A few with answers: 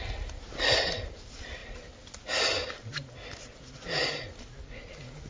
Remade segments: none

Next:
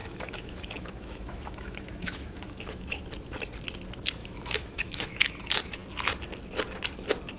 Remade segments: 0.0-3.0; 4.2-5.3

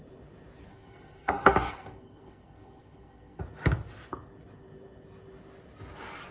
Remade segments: 0.7-3.4

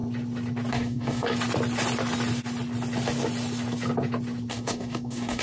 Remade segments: 0.7-1.3; 4.5-5.4

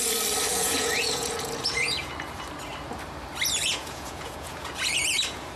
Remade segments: 0.5-2.1; 3.6-5.0

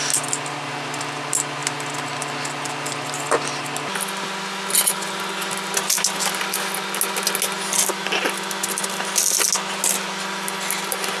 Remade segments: none

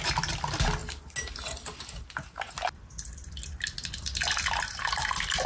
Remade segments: none

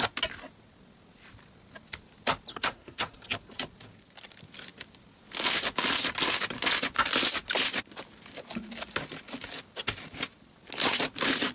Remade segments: 2.5-3.2